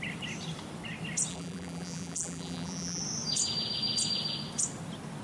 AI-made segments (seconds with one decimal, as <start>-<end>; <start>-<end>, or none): 1.3-3.0